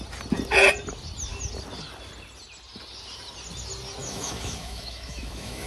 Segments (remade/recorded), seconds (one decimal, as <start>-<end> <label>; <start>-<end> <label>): 0.0-4.0 recorded; 4.0-5.7 remade